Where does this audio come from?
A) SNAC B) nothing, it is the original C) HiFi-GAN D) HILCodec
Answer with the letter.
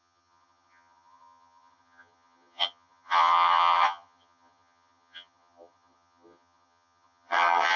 C